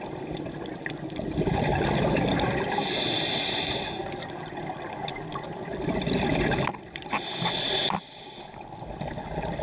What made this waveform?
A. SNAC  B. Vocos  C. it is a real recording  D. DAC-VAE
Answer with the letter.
C